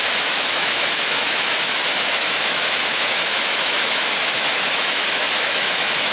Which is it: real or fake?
fake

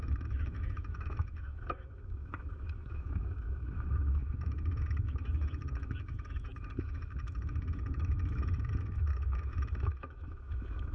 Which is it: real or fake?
fake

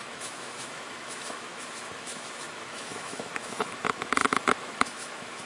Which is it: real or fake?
fake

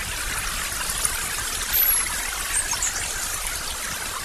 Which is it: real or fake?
real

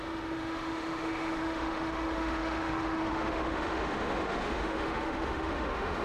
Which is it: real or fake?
fake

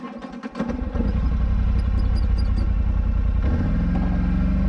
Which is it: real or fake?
real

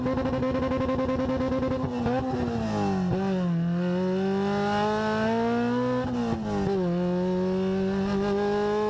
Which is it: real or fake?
real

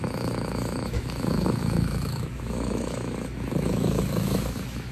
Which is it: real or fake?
fake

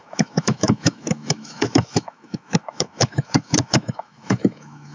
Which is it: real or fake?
fake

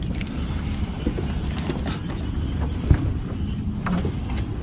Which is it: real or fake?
real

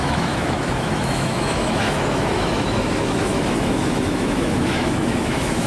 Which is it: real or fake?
fake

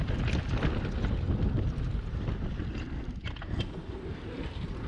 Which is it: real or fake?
real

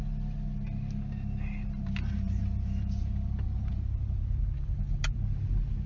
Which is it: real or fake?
real